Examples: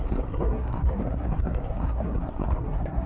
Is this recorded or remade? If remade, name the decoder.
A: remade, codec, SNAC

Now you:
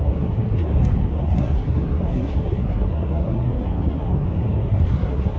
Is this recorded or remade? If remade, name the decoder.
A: remade, codec, SNAC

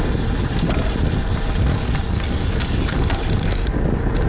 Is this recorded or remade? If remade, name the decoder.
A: recorded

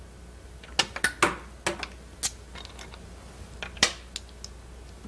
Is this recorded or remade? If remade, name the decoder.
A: recorded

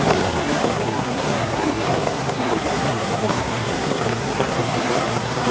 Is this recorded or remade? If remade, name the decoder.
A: remade, codec, SNAC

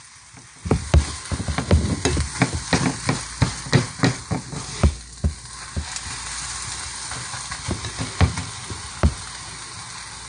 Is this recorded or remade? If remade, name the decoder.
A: recorded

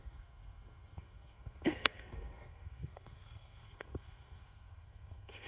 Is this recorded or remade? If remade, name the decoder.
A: remade, codec, SNAC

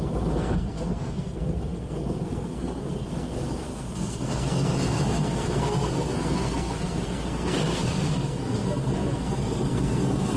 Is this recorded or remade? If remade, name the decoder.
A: remade, codec, SNAC